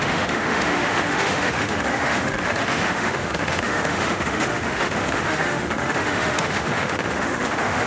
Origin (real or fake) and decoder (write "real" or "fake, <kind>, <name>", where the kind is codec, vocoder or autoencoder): fake, autoencoder, DAC-VAE